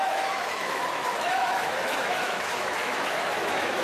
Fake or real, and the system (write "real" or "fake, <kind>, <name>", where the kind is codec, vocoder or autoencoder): fake, autoencoder, DAC-VAE